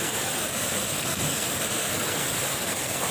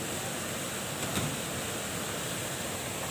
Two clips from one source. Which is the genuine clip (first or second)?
second